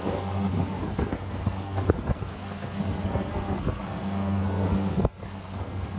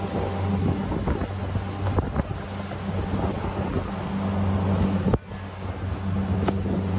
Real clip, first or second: second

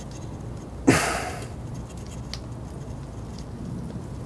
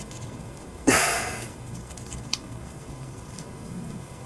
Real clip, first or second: first